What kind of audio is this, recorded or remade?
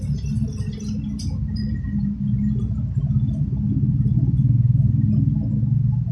recorded